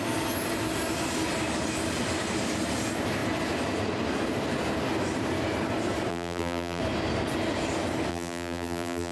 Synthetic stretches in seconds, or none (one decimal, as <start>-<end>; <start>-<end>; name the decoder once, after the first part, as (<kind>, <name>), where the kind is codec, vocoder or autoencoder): 6.1-6.8 (vocoder, BigVGAN v2); 8.1-9.1

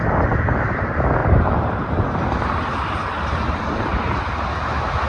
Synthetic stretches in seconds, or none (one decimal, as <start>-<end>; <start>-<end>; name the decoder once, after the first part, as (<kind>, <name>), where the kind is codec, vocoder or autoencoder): 1.2-3.6 (vocoder, BigVGAN v2)

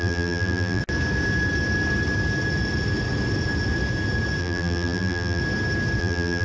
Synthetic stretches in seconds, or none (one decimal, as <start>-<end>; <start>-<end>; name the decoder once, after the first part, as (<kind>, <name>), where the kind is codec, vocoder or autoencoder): 0.0-0.8 (vocoder, BigVGAN v2); 4.4-5.4; 6.0-6.4

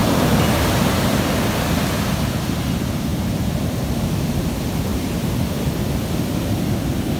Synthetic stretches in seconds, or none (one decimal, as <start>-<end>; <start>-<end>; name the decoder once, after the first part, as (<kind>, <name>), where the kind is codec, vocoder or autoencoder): 0.0-1.2 (vocoder, BigVGAN v2); 3.1-4.4; 4.9-5.8

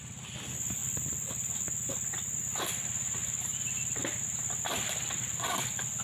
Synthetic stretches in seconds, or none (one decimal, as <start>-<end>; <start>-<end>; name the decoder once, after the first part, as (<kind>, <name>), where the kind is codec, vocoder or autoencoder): 0.8-1.9 (vocoder, BigVGAN v2); 3.2-6.0